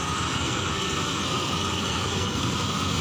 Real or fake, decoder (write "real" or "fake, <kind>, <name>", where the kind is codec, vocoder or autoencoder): fake, codec, SNAC